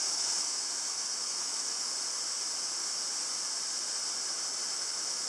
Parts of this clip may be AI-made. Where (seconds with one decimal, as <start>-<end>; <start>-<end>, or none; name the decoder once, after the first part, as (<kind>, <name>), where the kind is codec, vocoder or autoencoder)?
0.0-1.9 (autoencoder, DAC-VAE); 4.7-5.3